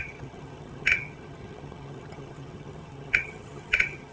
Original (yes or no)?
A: no